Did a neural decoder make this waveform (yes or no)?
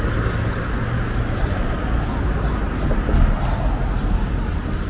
no